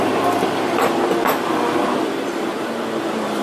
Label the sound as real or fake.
fake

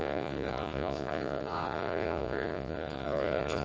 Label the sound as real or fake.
fake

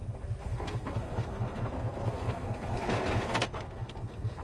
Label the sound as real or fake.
fake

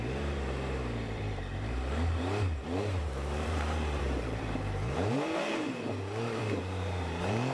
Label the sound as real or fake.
fake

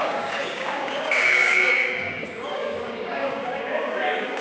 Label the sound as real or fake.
fake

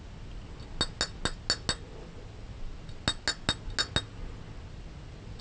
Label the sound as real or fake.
real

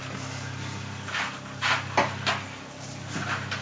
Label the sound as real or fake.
real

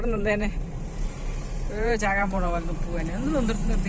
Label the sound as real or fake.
fake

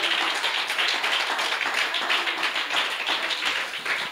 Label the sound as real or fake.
fake